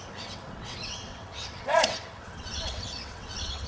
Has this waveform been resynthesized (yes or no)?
yes